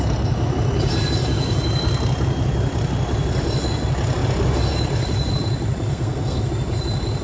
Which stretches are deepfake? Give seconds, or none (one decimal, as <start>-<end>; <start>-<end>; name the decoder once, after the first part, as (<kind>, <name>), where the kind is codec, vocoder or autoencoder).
5.9-6.5 (codec, SNAC)